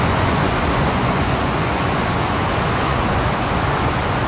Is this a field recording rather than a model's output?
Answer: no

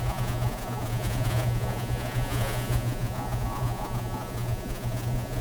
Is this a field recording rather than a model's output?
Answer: no